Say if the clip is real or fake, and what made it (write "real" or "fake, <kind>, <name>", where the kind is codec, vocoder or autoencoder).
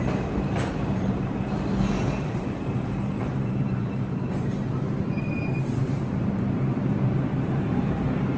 fake, vocoder, BigVGAN v2